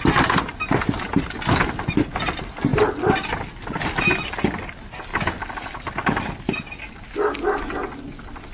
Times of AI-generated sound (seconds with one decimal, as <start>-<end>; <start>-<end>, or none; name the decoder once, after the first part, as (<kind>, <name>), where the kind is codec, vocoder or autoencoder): none